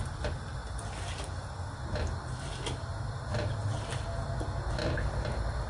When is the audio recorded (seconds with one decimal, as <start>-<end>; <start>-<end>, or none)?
0.0-5.7